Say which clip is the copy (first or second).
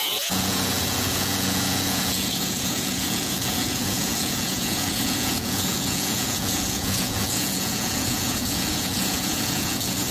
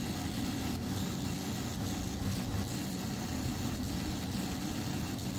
first